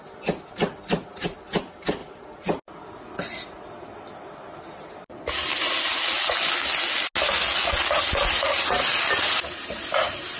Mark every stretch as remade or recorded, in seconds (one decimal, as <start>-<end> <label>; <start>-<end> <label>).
0.0-10.4 recorded